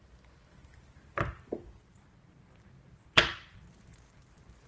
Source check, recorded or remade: recorded